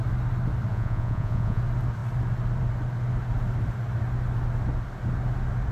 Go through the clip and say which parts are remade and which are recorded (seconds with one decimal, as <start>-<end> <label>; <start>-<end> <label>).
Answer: 0.0-0.7 recorded; 0.7-1.6 remade; 1.6-5.7 recorded